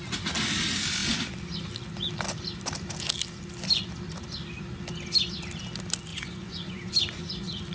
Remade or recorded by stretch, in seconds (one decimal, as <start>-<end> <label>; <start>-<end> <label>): 0.0-6.1 recorded; 6.1-6.9 remade; 6.9-7.7 recorded